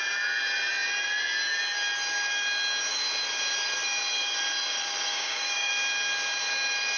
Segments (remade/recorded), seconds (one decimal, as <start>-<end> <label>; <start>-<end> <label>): 0.0-5.1 recorded; 5.1-5.7 remade; 5.7-7.0 recorded